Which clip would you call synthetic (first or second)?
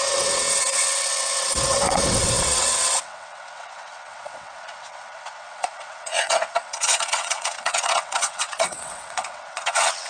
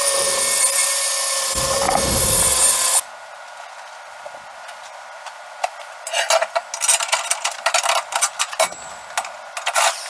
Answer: first